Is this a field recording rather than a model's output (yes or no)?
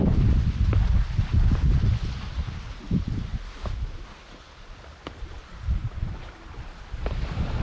yes